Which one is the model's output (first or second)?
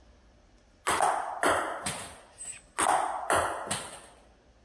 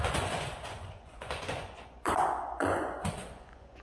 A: second